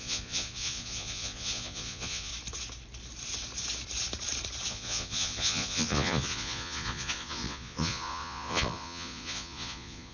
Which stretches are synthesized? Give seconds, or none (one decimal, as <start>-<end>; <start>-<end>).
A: 0.0-2.3; 4.7-10.1